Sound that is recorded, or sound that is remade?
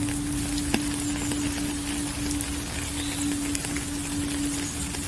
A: recorded